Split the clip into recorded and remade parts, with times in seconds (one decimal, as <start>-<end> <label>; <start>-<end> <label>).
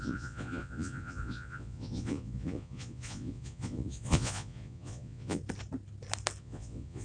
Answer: 0.0-5.4 remade; 5.4-6.4 recorded; 6.4-7.0 remade